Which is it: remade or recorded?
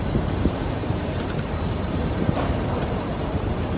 remade